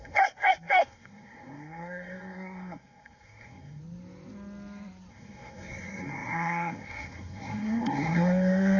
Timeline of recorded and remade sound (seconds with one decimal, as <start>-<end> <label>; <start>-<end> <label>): 0.0-3.8 remade; 3.8-5.1 recorded; 5.1-8.8 remade